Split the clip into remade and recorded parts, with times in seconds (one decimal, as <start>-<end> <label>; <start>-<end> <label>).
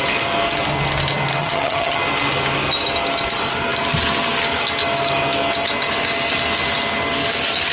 0.0-1.4 recorded; 1.4-2.0 remade; 2.0-7.7 recorded